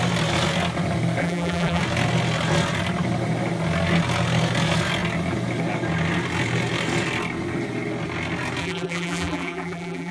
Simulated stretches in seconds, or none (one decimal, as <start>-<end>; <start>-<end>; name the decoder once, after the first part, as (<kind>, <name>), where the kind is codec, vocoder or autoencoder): 1.2-1.8 (vocoder, BigVGAN v2); 8.6-10.1